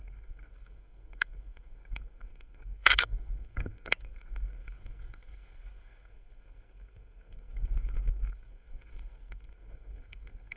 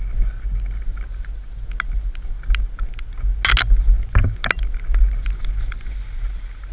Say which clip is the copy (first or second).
first